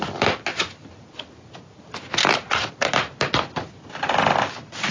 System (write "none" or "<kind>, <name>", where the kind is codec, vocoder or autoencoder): none